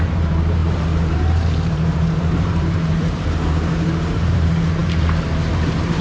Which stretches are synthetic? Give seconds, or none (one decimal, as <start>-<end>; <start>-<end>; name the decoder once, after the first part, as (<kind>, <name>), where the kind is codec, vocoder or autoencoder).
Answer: 0.0-6.0 (vocoder, BigVGAN v2)